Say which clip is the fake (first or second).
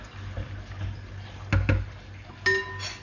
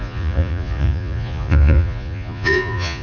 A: second